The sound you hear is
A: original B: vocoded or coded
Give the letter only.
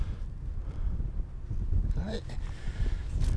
A